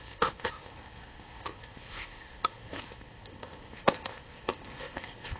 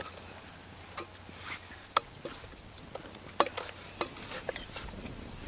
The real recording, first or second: second